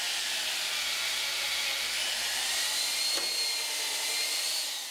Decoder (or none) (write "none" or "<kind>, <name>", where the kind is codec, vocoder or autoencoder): none